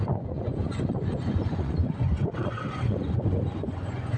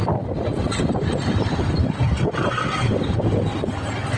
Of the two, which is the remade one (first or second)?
first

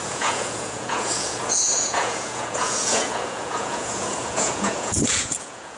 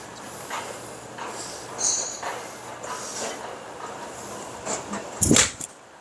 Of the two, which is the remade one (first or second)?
first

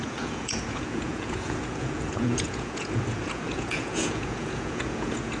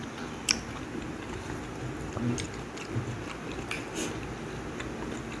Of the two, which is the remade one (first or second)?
first